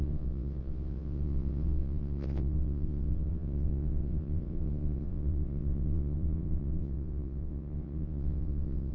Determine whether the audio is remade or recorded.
remade